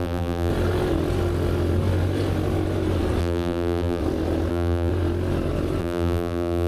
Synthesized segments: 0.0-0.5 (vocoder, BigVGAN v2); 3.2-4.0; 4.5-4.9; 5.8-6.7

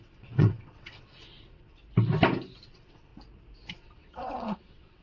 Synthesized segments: 0.0-1.8 (vocoder, WaveNeXt); 2.6-3.1; 3.7-5.0

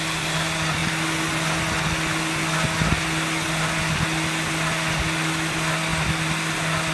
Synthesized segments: none

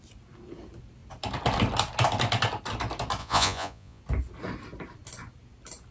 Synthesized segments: 3.2-4.0 (vocoder, Vocos)

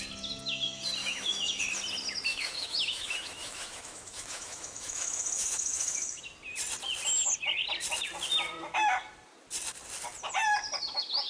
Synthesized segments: 1.0-1.6 (autoencoder, DAC-VAE); 2.3-6.2